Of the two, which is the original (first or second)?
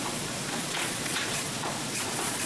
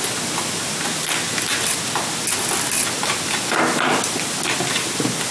second